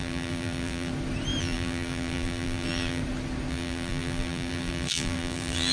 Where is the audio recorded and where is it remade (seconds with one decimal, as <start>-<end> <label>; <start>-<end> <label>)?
0.0-0.9 remade; 0.9-1.4 recorded; 1.4-3.0 remade; 3.0-3.5 recorded; 3.5-5.7 remade